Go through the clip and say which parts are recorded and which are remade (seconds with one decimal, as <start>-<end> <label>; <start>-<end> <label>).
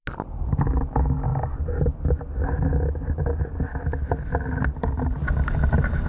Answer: 0.0-6.1 recorded